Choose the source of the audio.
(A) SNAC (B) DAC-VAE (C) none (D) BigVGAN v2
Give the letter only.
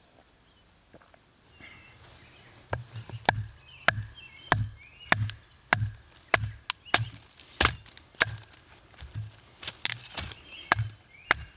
C